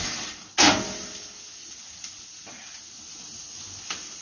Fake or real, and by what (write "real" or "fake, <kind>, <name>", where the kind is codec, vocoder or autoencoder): real